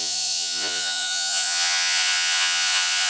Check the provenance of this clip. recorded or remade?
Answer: remade